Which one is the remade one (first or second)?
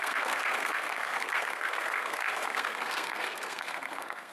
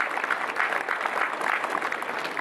first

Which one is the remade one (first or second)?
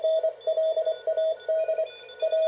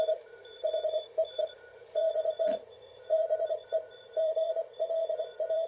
second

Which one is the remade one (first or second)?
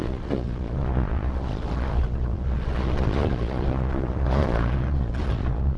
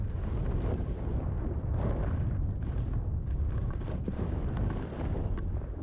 first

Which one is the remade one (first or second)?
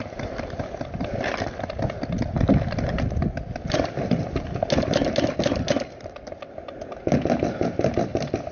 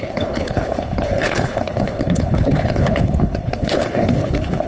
second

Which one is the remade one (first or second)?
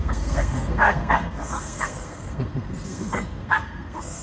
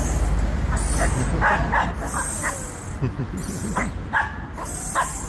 first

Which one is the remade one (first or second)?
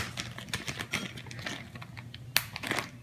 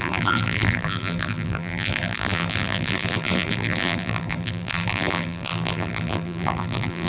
second